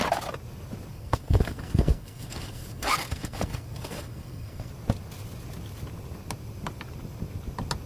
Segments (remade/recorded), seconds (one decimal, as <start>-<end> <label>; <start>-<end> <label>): 0.0-0.9 recorded; 0.9-4.7 remade; 4.7-7.9 recorded